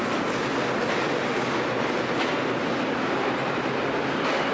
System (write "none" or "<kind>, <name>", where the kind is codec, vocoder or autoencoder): none